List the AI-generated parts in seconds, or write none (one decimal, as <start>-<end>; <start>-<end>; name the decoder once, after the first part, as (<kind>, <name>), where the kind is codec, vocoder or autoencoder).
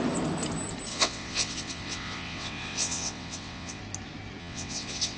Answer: 0.9-3.8 (vocoder, WaveNeXt); 4.4-5.2